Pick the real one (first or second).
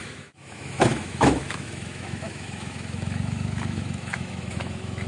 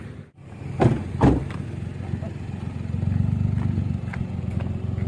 second